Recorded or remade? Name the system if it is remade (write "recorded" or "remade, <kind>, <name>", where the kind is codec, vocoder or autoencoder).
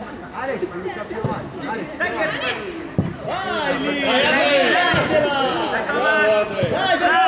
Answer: recorded